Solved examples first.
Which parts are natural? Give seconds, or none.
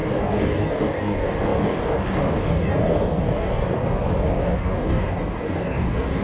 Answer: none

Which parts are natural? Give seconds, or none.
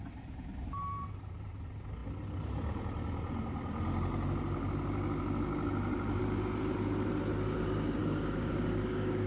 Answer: 0.0-8.0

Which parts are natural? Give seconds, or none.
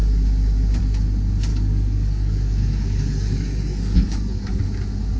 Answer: 0.0-1.5; 4.6-5.2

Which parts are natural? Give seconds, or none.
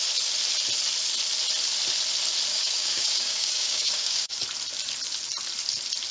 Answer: 0.0-2.5; 4.4-6.1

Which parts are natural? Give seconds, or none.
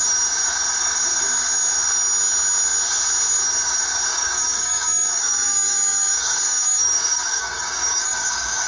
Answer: 0.0-4.1